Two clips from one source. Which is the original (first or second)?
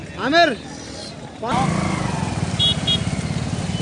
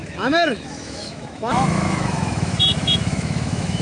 first